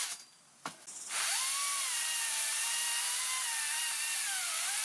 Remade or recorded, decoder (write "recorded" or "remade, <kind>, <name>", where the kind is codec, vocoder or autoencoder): recorded